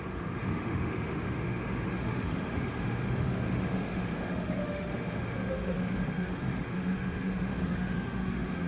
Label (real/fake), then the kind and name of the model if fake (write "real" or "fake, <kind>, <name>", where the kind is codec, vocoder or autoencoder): fake, autoencoder, DAC-VAE